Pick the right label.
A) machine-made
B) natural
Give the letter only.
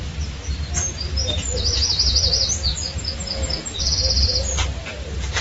B